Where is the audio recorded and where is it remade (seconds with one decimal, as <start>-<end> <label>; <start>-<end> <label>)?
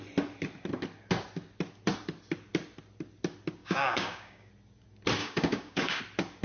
0.0-3.6 recorded; 3.6-4.5 remade; 4.5-5.2 recorded; 5.2-6.0 remade; 6.0-6.4 recorded